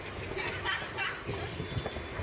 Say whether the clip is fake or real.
real